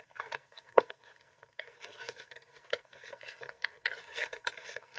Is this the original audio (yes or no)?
no